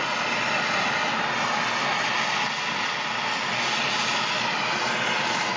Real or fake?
real